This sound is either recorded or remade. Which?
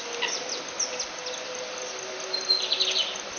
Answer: recorded